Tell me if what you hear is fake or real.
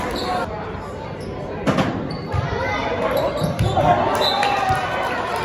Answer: real